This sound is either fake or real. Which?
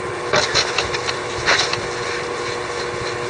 real